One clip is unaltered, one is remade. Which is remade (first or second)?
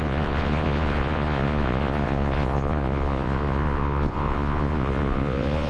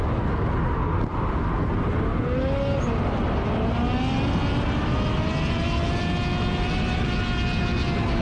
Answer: first